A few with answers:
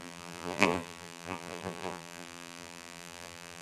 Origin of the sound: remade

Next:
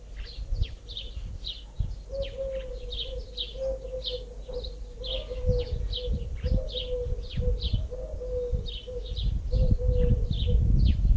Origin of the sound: recorded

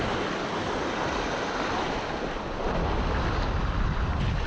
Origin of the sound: recorded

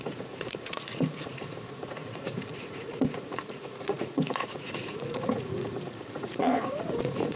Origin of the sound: remade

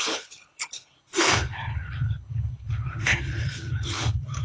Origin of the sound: remade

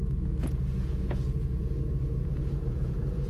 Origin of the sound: remade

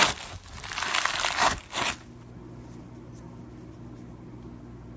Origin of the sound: recorded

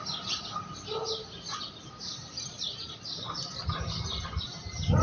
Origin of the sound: recorded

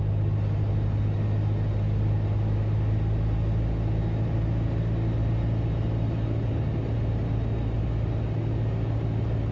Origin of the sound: recorded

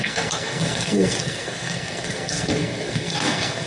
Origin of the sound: remade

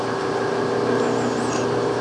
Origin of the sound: recorded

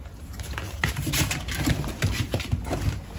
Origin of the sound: remade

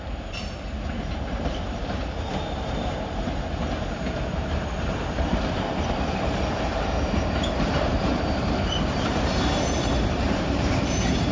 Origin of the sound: remade